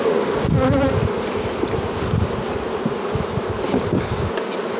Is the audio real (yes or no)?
yes